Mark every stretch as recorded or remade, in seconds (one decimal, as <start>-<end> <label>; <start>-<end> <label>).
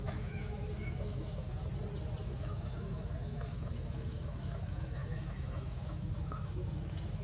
0.0-1.6 remade; 1.6-2.2 recorded; 2.2-7.2 remade